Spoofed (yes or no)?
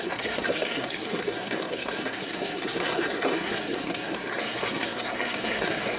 yes